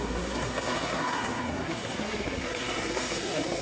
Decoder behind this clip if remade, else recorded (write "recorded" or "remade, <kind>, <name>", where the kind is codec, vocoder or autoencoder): remade, codec, SNAC